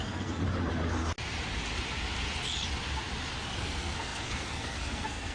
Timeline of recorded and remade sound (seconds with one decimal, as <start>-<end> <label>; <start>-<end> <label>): 0.0-0.4 remade; 0.4-3.6 recorded; 3.6-5.3 remade